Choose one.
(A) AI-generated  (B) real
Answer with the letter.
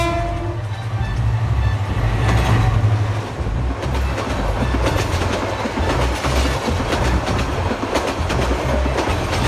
B